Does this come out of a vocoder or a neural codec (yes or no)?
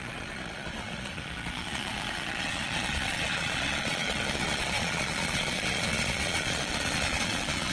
yes